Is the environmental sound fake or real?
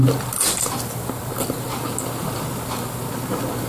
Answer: real